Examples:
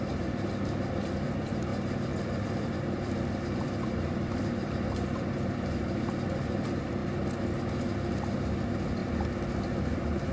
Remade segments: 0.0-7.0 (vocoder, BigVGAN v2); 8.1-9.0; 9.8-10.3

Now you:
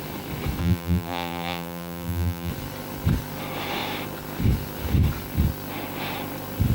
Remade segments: 0.6-2.5 (vocoder, BigVGAN v2)

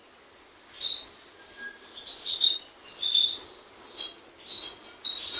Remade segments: none